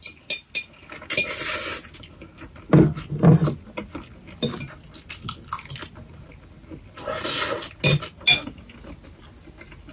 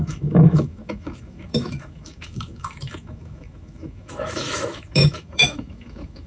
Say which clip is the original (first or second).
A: first